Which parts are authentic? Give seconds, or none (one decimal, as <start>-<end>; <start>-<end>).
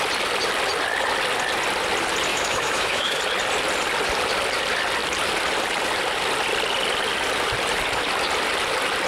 0.0-2.3; 3.2-9.1